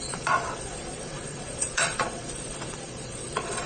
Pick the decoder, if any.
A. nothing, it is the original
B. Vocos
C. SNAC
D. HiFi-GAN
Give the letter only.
B